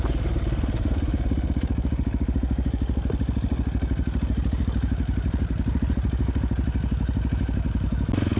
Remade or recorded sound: recorded